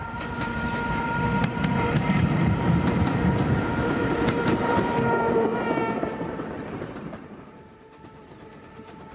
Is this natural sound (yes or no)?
no